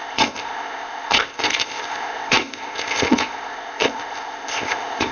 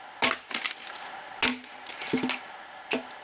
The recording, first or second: second